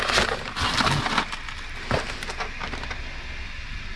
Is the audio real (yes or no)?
yes